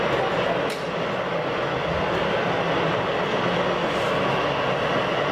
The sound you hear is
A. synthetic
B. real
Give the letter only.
B